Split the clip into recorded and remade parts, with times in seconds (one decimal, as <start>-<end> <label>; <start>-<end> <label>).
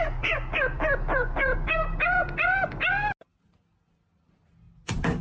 0.0-5.2 recorded